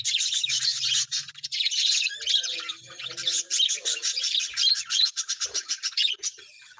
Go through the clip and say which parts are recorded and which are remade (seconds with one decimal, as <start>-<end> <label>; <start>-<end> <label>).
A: 0.0-0.7 recorded; 0.7-2.1 remade; 2.1-3.9 recorded; 3.9-4.4 remade; 4.4-4.9 recorded; 4.9-6.1 remade; 6.1-6.8 recorded